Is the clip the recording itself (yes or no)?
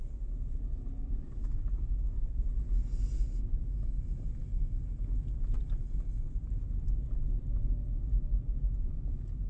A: yes